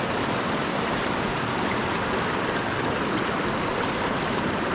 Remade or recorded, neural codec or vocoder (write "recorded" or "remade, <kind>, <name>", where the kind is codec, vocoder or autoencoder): recorded